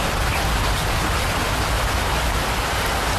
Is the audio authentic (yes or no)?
yes